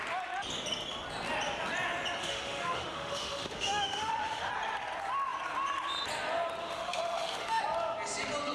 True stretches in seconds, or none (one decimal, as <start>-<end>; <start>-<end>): 0.0-2.2; 4.5-6.6; 7.6-8.5